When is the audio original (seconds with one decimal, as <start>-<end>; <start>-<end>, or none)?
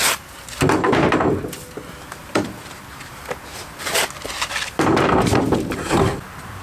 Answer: 0.0-2.2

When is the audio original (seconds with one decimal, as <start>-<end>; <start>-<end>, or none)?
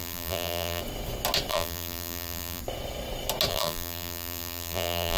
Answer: 0.8-1.5; 2.6-3.5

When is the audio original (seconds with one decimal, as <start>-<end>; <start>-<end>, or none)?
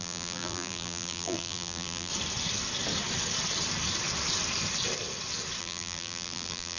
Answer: 2.1-5.6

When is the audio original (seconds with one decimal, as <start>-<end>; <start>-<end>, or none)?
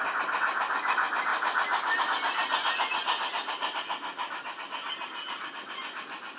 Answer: 0.0-1.3; 2.0-4.1; 4.6-6.4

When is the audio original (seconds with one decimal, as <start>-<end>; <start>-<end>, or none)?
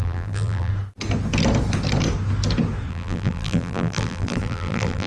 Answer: 0.7-2.9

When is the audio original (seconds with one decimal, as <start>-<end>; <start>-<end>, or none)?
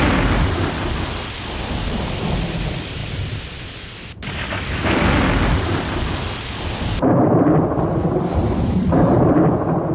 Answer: none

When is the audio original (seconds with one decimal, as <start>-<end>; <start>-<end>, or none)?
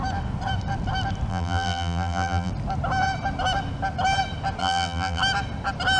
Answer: 0.0-1.3; 2.5-4.6; 5.2-6.0